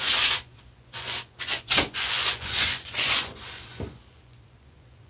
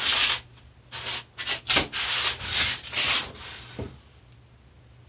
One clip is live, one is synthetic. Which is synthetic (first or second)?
first